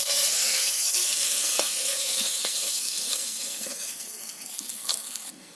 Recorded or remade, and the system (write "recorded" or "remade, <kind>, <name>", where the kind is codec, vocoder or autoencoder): remade, codec, SNAC